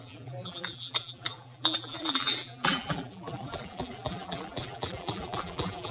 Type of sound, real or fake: fake